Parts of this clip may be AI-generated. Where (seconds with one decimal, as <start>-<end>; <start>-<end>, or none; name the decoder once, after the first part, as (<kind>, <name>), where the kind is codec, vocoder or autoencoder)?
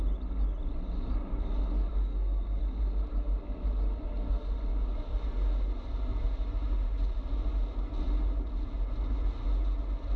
1.9-2.6 (codec, SNAC)